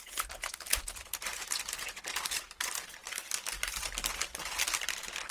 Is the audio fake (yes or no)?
no